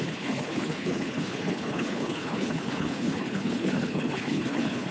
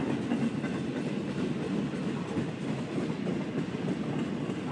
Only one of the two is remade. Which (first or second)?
first